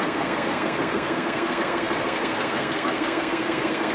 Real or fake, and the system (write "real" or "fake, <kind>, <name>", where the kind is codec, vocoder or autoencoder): fake, codec, SNAC